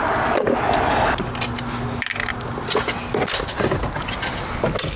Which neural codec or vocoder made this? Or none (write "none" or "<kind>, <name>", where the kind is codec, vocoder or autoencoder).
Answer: none